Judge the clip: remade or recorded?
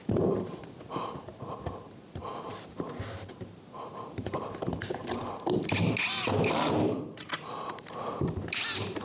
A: remade